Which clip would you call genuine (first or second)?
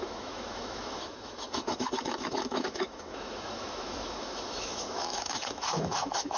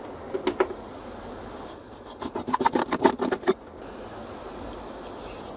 second